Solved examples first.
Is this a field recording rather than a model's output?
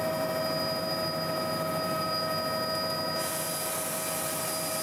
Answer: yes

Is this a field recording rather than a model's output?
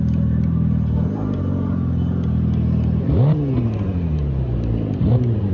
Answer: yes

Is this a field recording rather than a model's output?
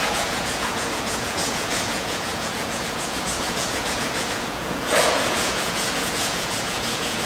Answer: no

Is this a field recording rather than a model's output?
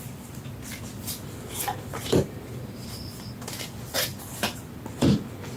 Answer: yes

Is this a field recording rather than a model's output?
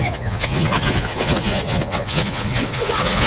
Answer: no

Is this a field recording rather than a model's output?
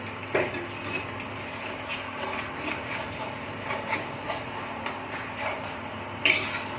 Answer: yes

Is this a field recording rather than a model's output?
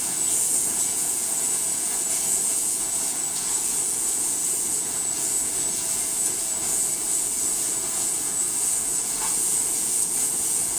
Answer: no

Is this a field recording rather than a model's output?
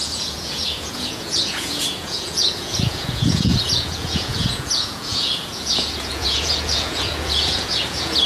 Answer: no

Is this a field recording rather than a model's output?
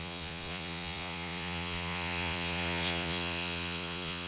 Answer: no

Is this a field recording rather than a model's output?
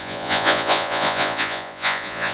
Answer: no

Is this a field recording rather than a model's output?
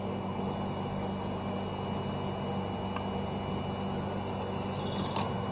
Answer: yes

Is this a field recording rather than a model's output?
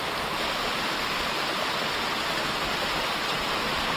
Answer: yes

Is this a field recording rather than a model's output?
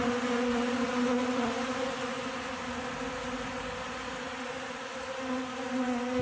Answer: yes